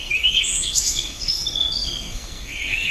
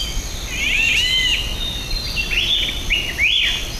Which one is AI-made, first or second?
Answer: first